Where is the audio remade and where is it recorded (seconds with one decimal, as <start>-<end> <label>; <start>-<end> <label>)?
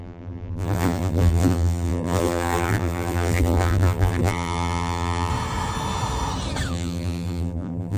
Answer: 0.0-5.3 remade; 5.3-6.7 recorded; 6.7-8.0 remade